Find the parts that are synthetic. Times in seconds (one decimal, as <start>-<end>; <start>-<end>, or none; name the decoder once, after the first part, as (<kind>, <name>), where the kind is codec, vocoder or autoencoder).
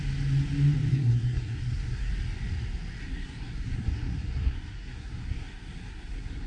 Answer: 0.9-2.1 (codec, SNAC); 3.0-6.5